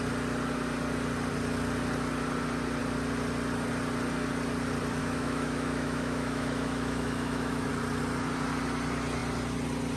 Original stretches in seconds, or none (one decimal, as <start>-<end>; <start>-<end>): 0.0-5.0; 7.7-10.0